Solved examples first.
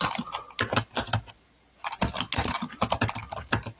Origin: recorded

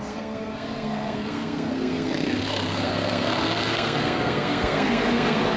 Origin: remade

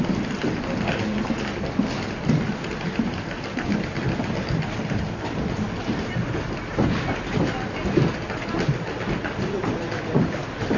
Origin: recorded